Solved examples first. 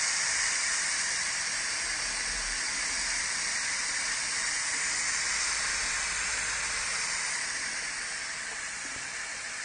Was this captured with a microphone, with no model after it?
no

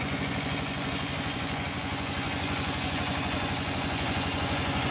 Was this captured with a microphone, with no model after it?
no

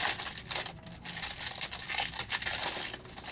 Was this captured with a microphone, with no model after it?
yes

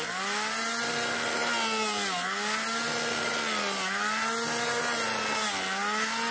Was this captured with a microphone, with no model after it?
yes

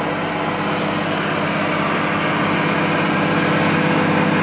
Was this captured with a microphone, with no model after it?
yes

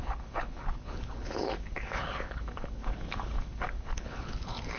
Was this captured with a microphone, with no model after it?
no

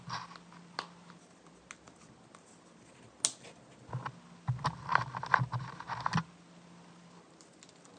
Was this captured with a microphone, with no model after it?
yes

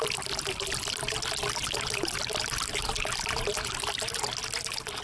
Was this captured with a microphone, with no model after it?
yes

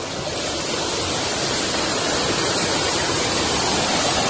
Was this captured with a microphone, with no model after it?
yes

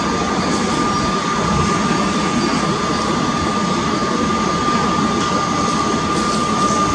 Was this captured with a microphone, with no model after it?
yes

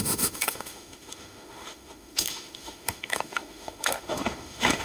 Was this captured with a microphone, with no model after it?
no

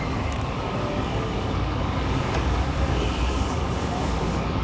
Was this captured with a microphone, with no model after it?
no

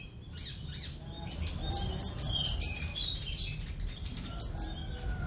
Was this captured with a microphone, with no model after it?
yes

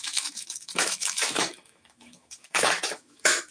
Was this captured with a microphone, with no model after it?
no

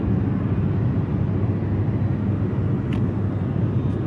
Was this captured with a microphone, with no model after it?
yes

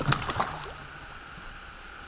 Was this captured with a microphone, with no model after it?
yes